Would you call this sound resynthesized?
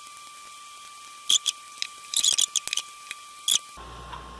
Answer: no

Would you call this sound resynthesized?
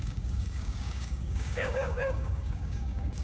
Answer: yes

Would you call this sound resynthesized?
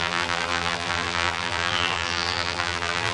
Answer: yes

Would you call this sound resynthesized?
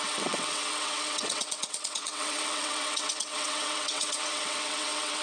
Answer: yes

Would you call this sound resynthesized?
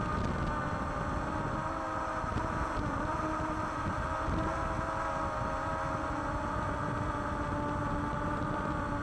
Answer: no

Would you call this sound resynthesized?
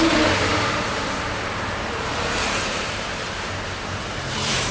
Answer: yes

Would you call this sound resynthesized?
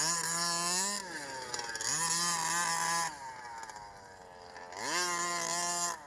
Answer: no